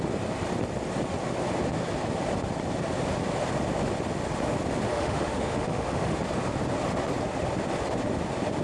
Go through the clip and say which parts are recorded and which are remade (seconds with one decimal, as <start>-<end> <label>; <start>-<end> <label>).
0.0-4.9 recorded; 4.9-6.2 remade; 6.2-8.6 recorded